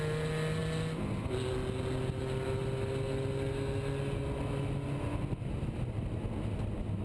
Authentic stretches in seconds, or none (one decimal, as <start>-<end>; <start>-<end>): 0.0-7.0